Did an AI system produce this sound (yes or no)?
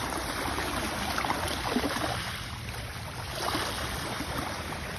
yes